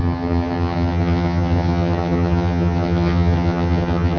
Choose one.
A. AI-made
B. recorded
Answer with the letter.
A